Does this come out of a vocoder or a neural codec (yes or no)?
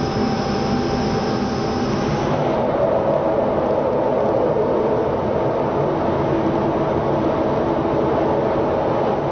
no